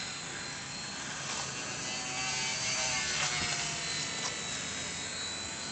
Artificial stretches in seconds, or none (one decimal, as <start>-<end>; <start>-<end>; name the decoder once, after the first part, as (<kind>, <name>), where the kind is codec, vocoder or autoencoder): 2.5-3.3 (vocoder, BigVGAN v2)